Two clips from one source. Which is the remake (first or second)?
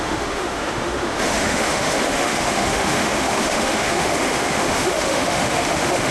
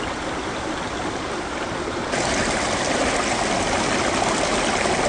first